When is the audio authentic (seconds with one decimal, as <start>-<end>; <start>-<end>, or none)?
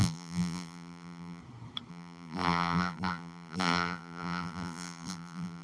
1.4-1.9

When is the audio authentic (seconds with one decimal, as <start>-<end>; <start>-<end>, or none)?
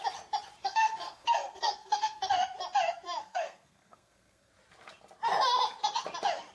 0.0-0.6; 2.3-3.2; 4.5-6.5